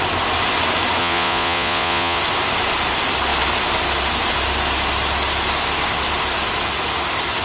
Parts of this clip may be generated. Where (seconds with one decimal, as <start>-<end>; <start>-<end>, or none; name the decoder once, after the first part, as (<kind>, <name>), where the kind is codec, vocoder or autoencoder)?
1.0-2.2 (vocoder, Vocos)